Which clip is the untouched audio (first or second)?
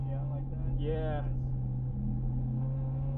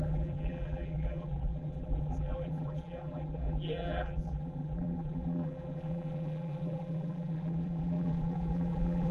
first